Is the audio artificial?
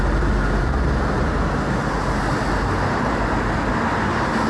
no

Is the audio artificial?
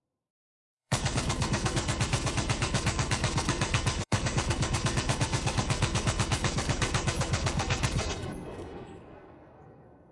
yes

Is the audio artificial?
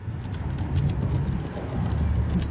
no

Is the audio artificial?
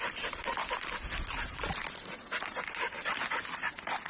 no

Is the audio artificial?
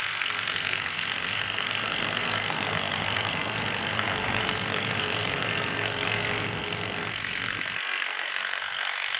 yes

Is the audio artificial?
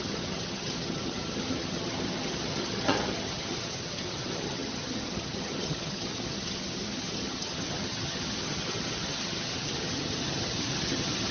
yes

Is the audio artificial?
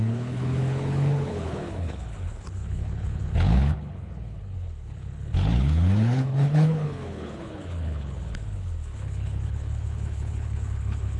yes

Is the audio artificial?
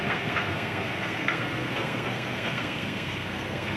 yes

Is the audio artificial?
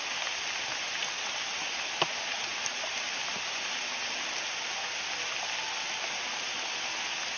no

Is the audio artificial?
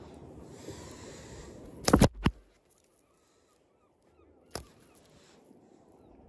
no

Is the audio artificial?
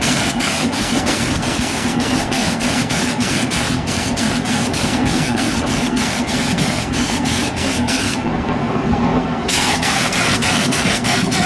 yes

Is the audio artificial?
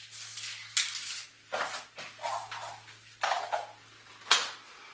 no